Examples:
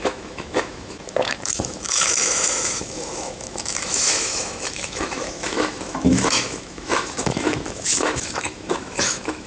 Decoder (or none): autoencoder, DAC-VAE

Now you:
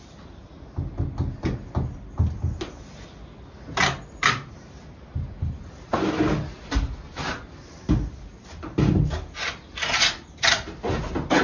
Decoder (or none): none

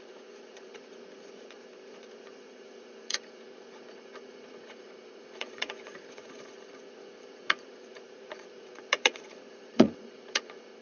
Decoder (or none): vocoder, Vocos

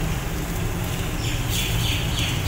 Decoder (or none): none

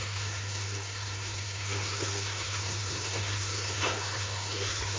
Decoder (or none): codec, SNAC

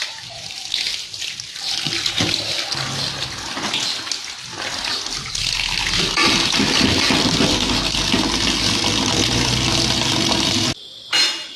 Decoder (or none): none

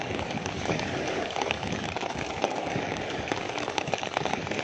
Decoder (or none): codec, DAC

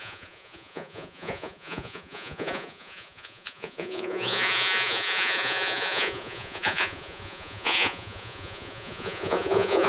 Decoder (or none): vocoder, Vocos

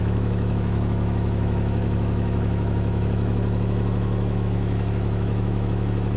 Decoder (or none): autoencoder, DAC-VAE